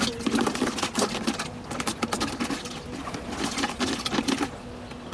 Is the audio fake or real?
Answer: real